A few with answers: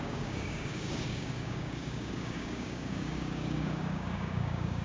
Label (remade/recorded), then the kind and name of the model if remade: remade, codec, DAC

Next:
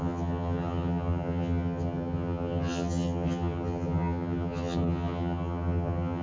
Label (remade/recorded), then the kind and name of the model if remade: remade, vocoder, HiFi-GAN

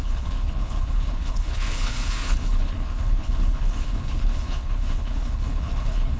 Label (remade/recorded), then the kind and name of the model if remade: remade, codec, HILCodec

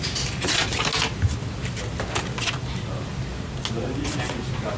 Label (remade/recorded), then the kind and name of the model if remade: recorded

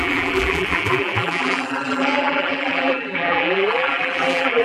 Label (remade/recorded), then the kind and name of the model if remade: remade, vocoder, BigVGAN v2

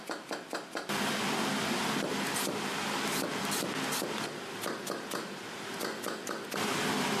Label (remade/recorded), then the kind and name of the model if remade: recorded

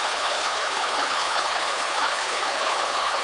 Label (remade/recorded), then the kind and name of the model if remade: remade, codec, HILCodec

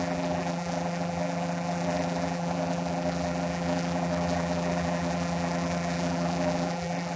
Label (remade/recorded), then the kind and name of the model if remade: remade, vocoder, BigVGAN v2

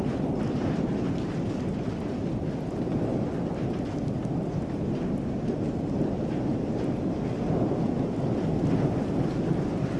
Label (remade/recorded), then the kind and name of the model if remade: recorded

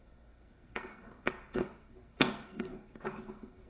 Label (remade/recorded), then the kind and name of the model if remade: remade, codec, SNAC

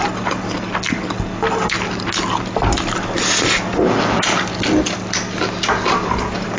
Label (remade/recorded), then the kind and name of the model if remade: recorded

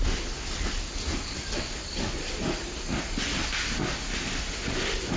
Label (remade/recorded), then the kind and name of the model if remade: recorded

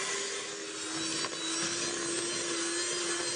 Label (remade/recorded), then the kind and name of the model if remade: recorded